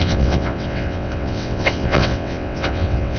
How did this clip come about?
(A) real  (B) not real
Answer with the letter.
B